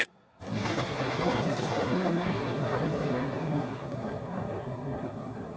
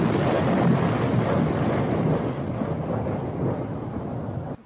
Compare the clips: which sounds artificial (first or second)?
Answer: first